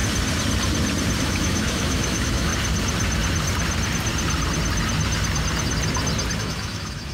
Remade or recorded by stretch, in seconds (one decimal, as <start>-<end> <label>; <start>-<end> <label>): 0.0-1.2 recorded; 1.2-2.5 remade; 2.5-6.4 recorded; 6.4-7.1 remade